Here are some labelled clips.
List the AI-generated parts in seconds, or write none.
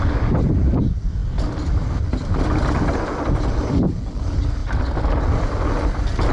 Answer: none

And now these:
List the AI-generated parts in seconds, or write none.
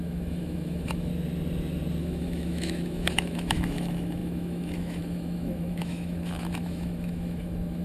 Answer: 0.0-1.1 (autoencoder, DAC-VAE); 2.0-7.8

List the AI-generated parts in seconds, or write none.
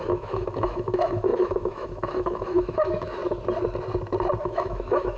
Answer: 0.0-3.2 (autoencoder, DAC-VAE); 4.4-5.2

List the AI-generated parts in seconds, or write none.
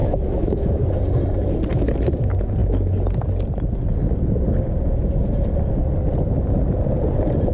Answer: 0.0-0.9 (autoencoder, DAC-VAE)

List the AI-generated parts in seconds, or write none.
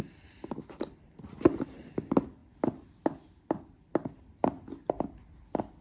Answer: none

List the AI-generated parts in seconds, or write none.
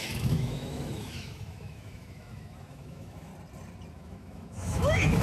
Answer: 0.0-3.3 (autoencoder, DAC-VAE); 3.9-5.2